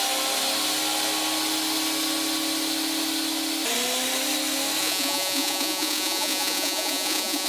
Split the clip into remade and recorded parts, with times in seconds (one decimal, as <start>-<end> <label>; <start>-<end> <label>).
0.0-4.8 recorded; 4.8-7.5 remade

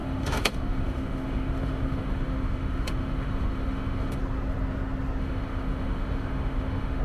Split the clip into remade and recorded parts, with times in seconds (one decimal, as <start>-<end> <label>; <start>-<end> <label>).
0.0-4.2 remade; 4.2-5.2 recorded; 5.2-7.0 remade

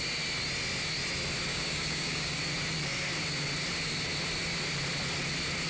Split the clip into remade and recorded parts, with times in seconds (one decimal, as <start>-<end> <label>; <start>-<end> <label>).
0.0-1.5 recorded; 1.5-2.4 remade; 2.4-5.7 recorded

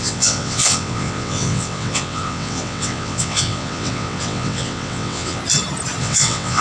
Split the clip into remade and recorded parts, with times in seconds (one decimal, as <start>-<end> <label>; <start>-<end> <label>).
0.0-5.4 remade; 5.4-6.0 recorded; 6.0-6.6 remade

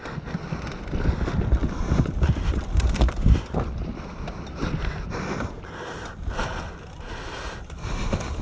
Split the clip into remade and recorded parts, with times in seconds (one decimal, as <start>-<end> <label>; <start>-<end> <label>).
0.0-8.4 recorded

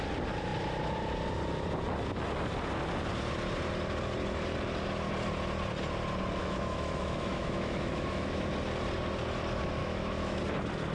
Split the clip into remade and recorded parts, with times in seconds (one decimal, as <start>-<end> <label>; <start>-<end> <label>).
0.0-6.4 recorded; 6.4-8.5 remade; 8.5-9.8 recorded; 9.8-10.4 remade; 10.4-10.9 recorded

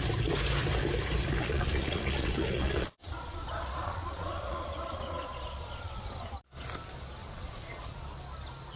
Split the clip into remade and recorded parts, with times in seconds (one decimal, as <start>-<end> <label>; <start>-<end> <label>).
0.0-1.4 recorded; 1.4-6.3 remade; 6.3-7.2 recorded; 7.2-8.0 remade; 8.0-8.8 recorded

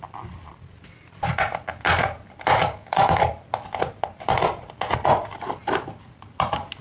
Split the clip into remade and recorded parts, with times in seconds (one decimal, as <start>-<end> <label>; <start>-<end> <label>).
0.0-2.6 recorded; 2.6-3.2 remade; 3.2-6.8 recorded